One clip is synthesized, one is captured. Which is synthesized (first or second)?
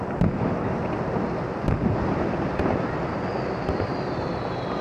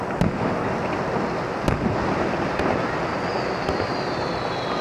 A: first